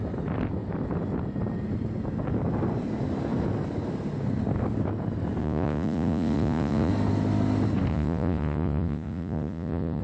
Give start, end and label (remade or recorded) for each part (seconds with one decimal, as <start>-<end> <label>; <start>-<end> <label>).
0.0-5.4 recorded; 5.4-6.9 remade; 6.9-7.9 recorded; 7.9-10.0 remade